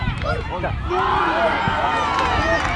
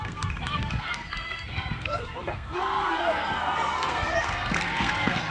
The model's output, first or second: second